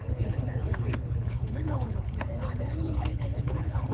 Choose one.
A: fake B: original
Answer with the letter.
A